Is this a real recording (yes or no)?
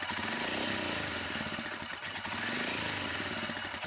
yes